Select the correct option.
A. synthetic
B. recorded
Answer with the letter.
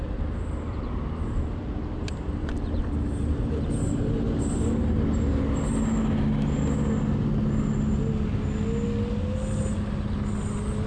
B